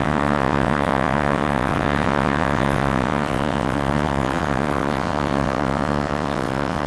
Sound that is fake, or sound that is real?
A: fake